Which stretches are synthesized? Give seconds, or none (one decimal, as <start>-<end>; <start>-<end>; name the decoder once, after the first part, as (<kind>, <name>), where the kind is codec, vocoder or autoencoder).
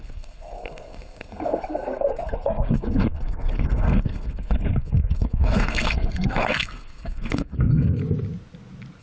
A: 0.0-8.0 (codec, SNAC)